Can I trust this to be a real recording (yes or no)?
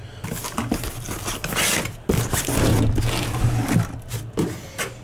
yes